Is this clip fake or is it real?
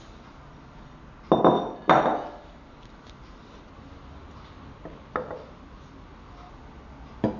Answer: real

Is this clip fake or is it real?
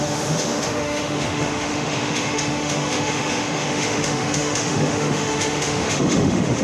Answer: fake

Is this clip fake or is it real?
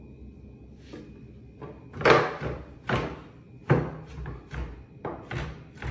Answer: real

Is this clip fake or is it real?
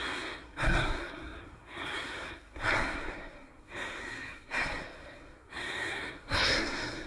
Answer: fake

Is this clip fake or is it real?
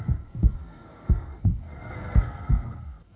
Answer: fake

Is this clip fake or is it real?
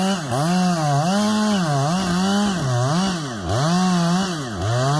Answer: real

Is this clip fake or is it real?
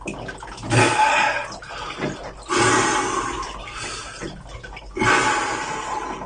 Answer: real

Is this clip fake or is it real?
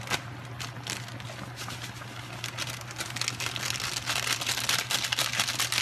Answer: real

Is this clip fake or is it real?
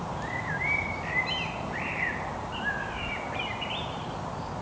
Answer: fake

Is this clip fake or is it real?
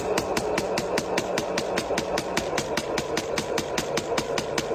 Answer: real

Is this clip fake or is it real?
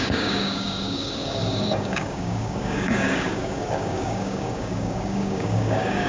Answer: fake